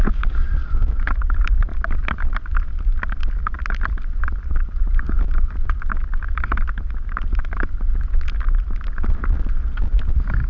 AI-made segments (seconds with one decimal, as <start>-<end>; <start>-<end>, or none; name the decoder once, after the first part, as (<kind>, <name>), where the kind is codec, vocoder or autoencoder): none